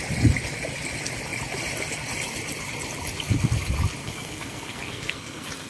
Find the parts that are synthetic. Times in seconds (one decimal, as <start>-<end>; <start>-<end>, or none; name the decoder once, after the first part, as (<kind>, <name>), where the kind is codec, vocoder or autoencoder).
4.0-5.7 (codec, SNAC)